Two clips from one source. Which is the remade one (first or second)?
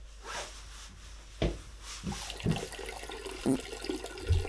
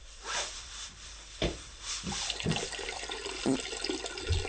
second